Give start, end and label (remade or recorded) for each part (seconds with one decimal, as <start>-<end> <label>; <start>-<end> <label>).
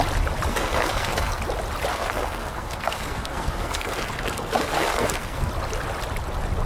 0.0-0.5 recorded; 0.5-1.4 remade; 1.4-1.9 recorded; 1.9-5.5 remade; 5.5-6.7 recorded